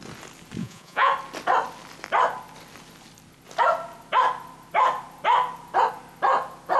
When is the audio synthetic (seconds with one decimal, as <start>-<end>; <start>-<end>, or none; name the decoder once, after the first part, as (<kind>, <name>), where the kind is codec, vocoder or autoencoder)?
0.6-1.1 (vocoder, Vocos)